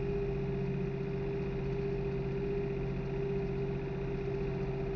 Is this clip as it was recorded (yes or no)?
yes